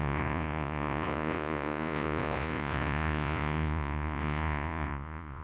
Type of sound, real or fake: fake